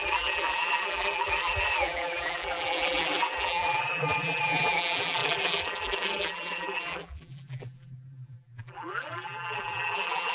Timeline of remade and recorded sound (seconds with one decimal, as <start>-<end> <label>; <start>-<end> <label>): 0.0-10.3 remade